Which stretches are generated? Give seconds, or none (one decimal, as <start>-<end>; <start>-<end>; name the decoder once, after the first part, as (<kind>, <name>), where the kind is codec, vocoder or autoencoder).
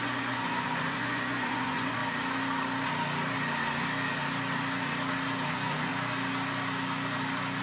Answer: 0.0-2.0 (vocoder, Vocos); 5.5-5.9